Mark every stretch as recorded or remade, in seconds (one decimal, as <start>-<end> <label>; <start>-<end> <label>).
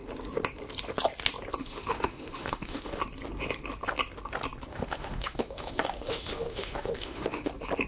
0.0-1.6 recorded; 1.6-3.0 remade; 3.0-4.7 recorded; 4.7-7.5 remade; 7.5-7.9 recorded